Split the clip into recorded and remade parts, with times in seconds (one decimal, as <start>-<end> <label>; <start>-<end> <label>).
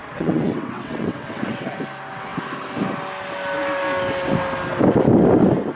0.0-1.7 remade; 1.7-5.8 recorded